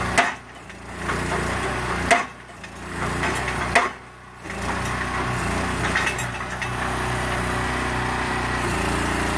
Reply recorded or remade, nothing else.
recorded